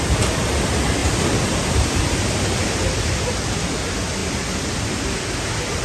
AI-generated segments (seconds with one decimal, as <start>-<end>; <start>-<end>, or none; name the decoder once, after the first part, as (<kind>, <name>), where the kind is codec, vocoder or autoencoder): 1.0-2.0 (vocoder, BigVGAN v2)